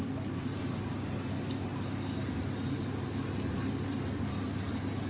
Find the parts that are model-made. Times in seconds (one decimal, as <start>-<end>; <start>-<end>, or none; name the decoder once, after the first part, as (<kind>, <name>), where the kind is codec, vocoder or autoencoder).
none